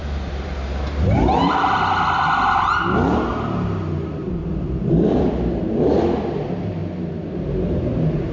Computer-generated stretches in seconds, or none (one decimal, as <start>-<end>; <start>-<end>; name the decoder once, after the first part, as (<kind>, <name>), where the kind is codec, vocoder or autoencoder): 0.0-1.6 (vocoder, BigVGAN v2); 4.2-5.6